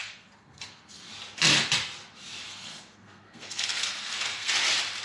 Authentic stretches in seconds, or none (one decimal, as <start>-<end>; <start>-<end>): 1.1-2.5; 4.5-5.0